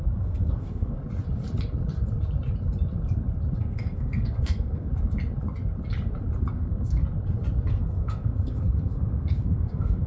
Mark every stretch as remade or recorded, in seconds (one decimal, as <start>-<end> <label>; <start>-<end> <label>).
0.0-1.0 remade; 1.0-3.6 recorded; 3.6-4.9 remade; 4.9-6.5 recorded; 6.5-7.0 remade; 7.0-7.7 recorded; 7.7-10.1 remade